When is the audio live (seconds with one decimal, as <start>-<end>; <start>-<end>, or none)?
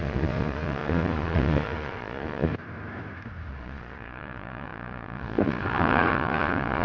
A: 2.5-3.5